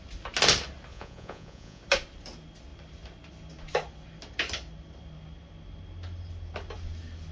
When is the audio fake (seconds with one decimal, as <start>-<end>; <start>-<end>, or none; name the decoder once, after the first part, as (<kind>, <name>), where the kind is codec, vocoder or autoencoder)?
0.9-1.8 (vocoder, Vocos)